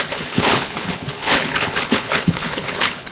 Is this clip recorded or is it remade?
remade